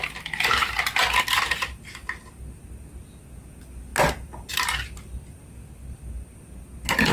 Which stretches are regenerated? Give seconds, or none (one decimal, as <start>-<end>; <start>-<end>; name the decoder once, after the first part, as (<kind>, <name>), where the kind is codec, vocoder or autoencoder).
none